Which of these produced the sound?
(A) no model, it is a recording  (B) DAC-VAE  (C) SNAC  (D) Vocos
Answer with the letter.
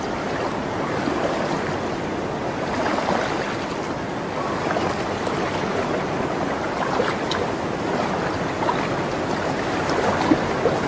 A